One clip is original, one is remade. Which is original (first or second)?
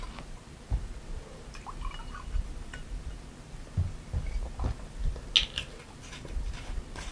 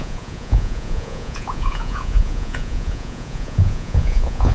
first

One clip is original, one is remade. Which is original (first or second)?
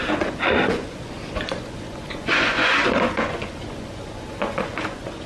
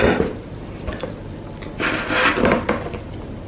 second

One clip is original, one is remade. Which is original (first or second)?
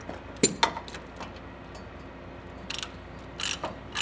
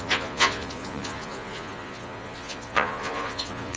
first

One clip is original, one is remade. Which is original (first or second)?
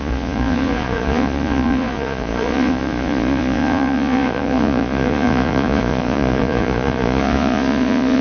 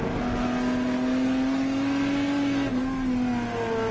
second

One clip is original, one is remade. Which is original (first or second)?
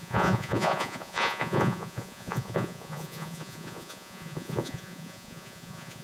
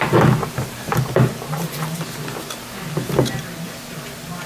second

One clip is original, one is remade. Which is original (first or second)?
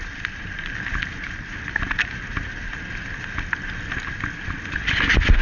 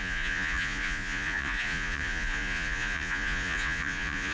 first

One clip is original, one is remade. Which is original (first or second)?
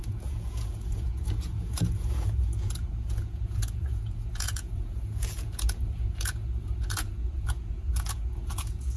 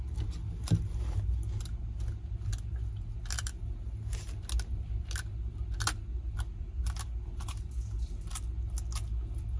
second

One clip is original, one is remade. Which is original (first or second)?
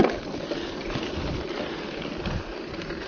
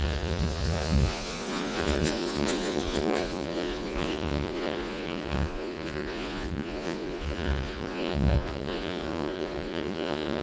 first